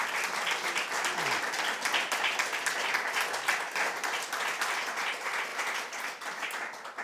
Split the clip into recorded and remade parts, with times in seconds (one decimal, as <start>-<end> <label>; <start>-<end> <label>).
0.0-7.0 recorded